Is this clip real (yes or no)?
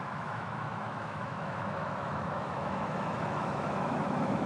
no